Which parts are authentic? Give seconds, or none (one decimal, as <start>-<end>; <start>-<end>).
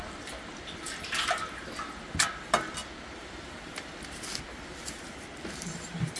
0.0-6.2